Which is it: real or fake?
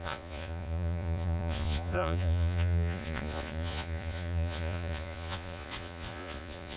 fake